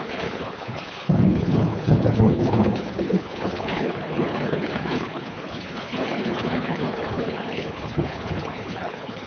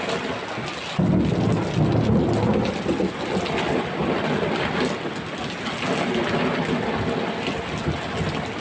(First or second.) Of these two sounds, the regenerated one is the first